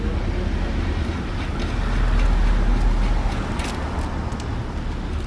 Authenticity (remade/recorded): recorded